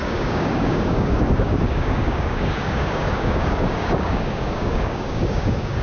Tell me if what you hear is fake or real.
fake